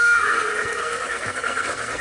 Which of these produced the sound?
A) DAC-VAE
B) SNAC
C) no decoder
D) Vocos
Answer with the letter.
B